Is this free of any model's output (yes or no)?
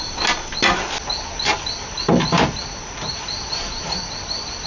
yes